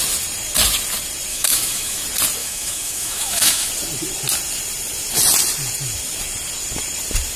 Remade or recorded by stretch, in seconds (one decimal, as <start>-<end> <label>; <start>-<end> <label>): 0.0-1.3 recorded; 1.3-2.0 remade; 2.0-2.4 recorded; 2.4-3.7 remade; 3.7-7.4 recorded